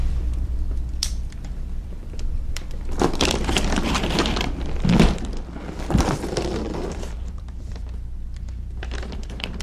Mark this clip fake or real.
fake